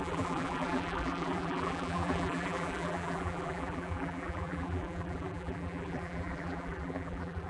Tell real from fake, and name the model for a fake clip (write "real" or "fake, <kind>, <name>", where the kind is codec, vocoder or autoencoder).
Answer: fake, vocoder, BigVGAN v2